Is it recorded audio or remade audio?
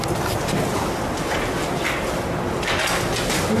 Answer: recorded